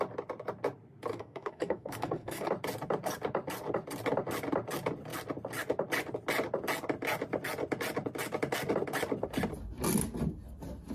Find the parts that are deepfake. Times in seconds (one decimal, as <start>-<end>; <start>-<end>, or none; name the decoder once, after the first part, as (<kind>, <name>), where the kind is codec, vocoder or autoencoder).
1.1-2.5 (codec, SNAC)